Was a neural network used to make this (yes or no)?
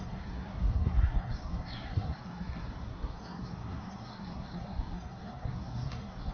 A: yes